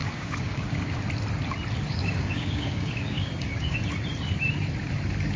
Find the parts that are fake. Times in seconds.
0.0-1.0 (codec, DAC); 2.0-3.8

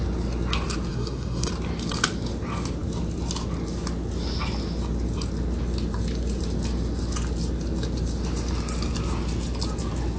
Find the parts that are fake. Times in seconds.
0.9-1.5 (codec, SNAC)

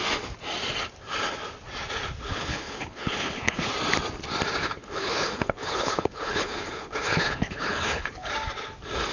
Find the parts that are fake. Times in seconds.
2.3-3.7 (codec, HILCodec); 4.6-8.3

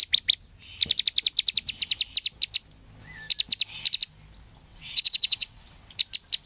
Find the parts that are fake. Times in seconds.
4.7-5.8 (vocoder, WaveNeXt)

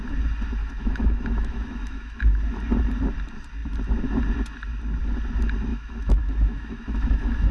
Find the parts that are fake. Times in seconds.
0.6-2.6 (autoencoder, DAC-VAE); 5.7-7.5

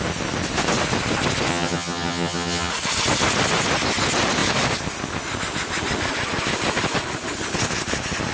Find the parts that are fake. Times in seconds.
1.5-2.7 (vocoder, HiFi-GAN)

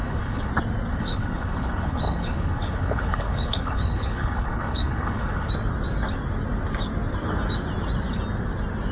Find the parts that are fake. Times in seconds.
0.0-0.5 (codec, HILCodec); 0.9-5.5

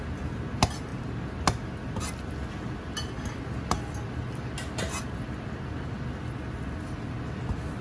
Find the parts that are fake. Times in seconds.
none